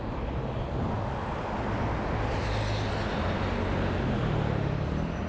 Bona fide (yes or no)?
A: yes